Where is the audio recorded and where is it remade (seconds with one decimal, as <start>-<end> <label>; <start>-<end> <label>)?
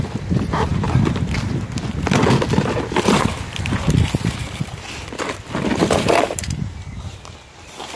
0.0-8.0 remade